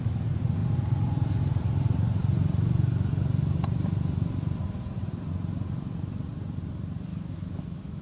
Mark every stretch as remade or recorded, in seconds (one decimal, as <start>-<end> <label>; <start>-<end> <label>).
0.0-7.1 recorded; 7.1-8.0 remade